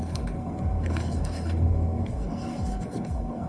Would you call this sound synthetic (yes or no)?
yes